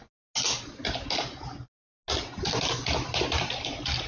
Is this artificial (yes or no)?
no